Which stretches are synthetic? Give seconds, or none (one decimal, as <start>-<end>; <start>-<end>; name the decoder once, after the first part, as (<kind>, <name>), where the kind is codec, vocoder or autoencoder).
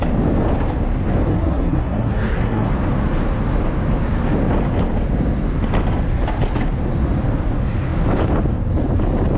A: 1.3-2.7 (codec, SNAC)